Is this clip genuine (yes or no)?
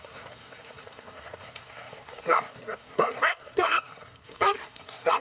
no